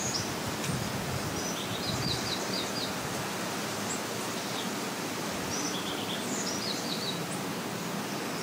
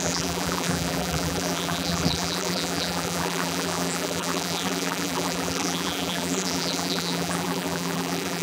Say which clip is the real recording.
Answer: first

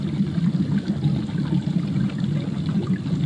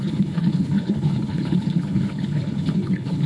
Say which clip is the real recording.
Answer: first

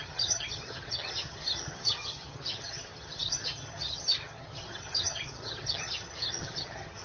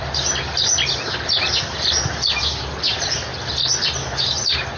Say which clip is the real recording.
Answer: second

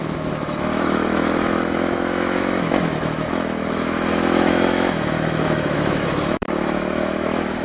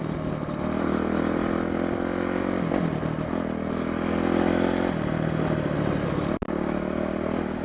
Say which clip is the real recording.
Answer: second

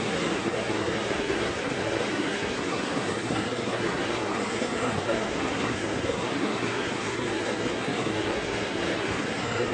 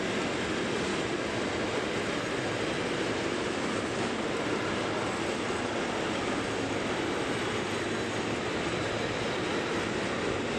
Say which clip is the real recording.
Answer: second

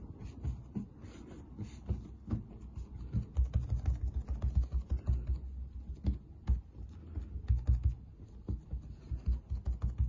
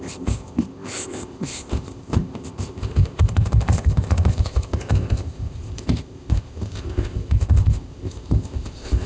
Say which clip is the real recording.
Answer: first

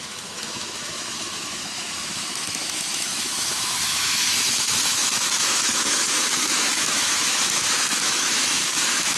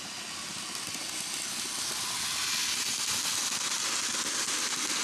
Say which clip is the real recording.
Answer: second